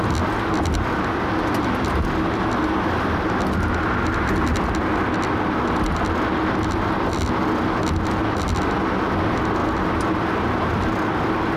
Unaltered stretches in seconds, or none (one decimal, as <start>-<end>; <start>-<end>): 0.0-11.6